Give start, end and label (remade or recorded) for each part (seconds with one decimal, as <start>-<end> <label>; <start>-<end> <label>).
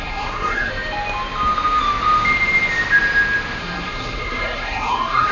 0.0-0.7 remade; 0.7-3.6 recorded; 3.6-5.3 remade